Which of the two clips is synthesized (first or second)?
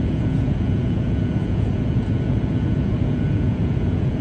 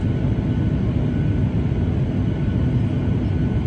first